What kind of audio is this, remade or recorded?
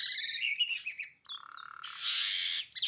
recorded